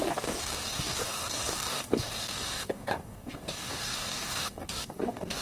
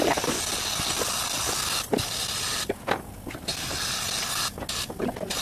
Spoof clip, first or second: first